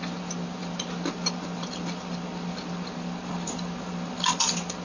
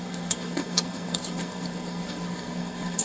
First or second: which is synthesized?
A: second